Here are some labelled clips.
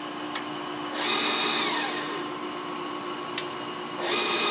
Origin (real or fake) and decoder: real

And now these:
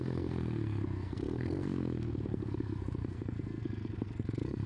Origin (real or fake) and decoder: fake, codec, SNAC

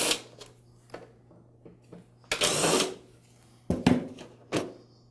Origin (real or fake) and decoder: real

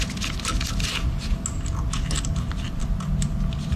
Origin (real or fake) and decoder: real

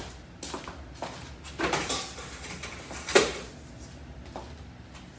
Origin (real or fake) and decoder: real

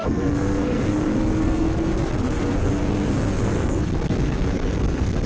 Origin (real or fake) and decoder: fake, codec, SNAC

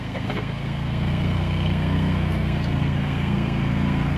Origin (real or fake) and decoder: fake, codec, SNAC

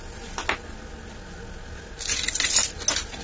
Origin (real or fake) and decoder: real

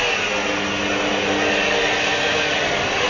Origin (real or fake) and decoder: real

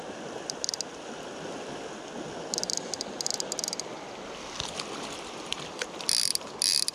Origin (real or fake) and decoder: real